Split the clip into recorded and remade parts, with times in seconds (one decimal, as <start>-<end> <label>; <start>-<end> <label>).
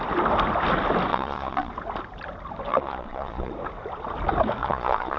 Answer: 0.0-1.1 recorded; 1.1-1.7 remade; 1.7-2.7 recorded; 2.7-3.5 remade; 3.5-4.6 recorded; 4.6-5.2 remade